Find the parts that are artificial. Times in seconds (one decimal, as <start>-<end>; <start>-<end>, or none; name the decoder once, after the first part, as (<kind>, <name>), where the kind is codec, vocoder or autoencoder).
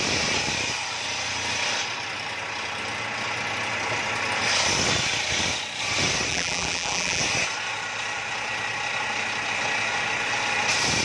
6.3-7.2 (vocoder, BigVGAN v2)